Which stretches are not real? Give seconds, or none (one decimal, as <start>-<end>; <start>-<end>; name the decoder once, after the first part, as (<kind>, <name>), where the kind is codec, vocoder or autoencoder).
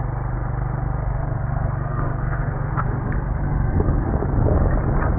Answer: 1.0-4.1 (codec, SNAC)